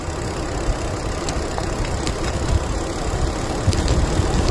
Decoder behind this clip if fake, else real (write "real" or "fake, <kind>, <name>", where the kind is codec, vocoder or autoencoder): real